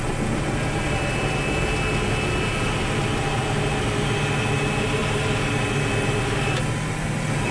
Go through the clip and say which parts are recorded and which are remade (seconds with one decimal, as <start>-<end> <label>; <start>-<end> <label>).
0.0-7.5 recorded